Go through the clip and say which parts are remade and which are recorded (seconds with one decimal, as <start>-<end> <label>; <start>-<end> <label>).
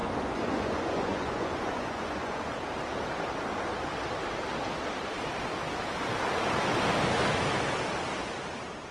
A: 0.0-2.4 remade; 2.4-8.9 recorded